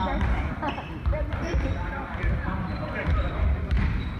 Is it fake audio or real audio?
fake